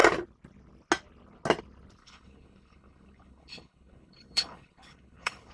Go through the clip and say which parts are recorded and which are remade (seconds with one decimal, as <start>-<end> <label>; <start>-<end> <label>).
0.0-2.0 recorded; 2.0-5.5 remade